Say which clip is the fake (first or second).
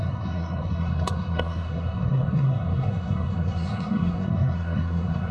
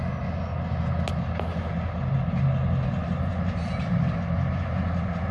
first